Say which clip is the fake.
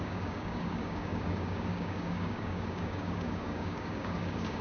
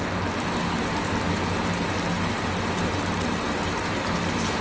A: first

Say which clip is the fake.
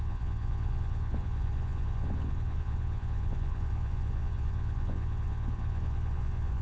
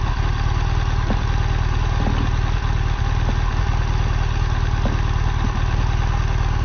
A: first